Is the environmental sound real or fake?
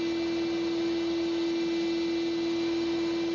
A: real